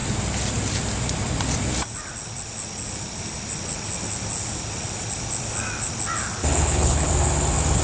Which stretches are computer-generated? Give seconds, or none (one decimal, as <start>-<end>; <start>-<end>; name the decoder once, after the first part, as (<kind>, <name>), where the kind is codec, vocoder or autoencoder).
6.4-7.1 (codec, HILCodec)